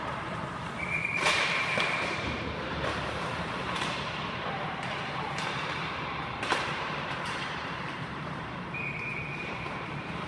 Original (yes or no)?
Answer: no